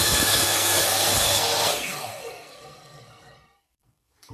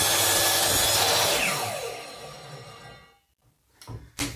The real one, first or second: second